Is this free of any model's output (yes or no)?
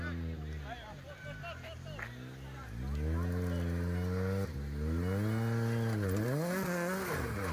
yes